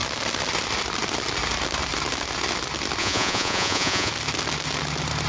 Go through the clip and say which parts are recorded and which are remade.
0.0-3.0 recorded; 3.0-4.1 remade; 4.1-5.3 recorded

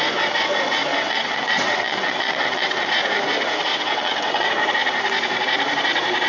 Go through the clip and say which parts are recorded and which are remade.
0.0-0.9 recorded; 0.9-2.9 remade; 2.9-3.7 recorded; 3.7-4.5 remade; 4.5-6.3 recorded

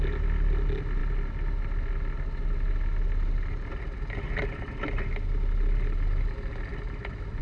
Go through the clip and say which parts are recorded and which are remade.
0.0-7.4 recorded

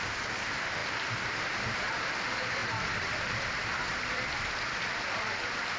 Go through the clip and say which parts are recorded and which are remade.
0.0-5.8 remade

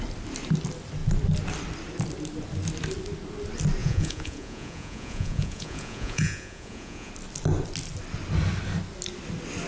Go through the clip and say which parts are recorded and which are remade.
0.0-3.8 recorded; 3.8-7.1 remade; 7.1-9.7 recorded

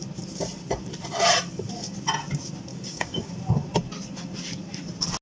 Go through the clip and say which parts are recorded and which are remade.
0.0-2.7 recorded; 2.7-3.3 remade; 3.3-5.2 recorded

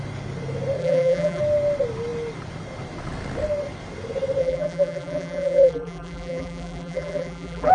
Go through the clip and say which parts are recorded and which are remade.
0.0-0.8 recorded; 0.8-1.4 remade; 1.4-4.4 recorded; 4.4-7.7 remade